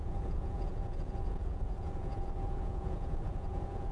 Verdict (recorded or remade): remade